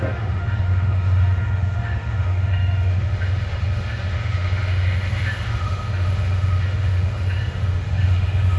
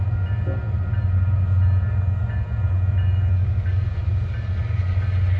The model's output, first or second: first